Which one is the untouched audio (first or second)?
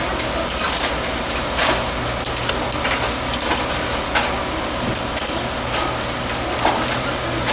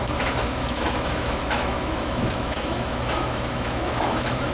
first